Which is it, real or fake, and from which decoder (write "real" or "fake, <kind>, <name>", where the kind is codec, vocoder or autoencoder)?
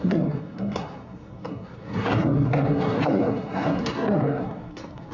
fake, codec, SNAC